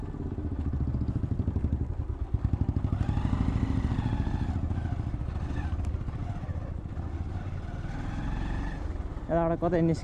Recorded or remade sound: recorded